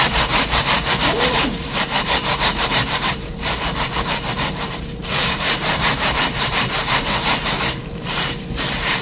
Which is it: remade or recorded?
remade